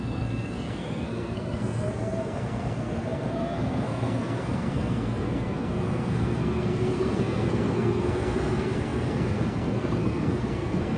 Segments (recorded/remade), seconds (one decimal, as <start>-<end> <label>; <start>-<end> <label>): 0.0-11.0 remade